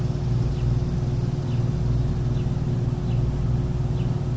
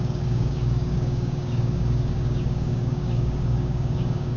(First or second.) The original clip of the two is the first